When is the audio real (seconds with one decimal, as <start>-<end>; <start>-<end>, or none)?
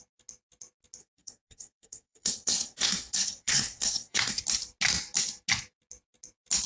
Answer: 0.0-1.0; 4.4-6.7